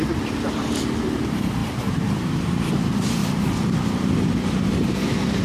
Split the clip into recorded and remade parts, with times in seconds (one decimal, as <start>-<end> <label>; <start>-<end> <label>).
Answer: 0.0-3.2 remade; 3.2-4.7 recorded; 4.7-5.4 remade